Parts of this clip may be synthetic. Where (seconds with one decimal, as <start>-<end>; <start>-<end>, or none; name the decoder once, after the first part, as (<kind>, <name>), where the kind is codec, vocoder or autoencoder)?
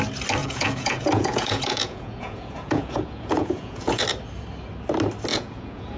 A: 0.4-4.0 (vocoder, Vocos); 5.3-6.0